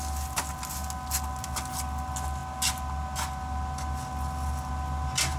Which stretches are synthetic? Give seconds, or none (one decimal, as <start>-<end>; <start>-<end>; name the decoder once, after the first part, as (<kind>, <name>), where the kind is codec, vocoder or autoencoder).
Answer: none